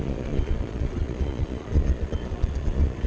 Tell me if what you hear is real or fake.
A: fake